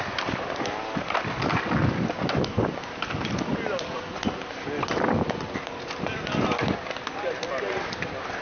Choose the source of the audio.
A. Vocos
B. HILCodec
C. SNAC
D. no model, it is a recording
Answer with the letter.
D